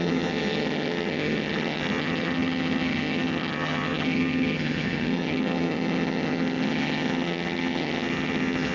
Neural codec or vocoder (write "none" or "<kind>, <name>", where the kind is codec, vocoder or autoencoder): vocoder, HiFi-GAN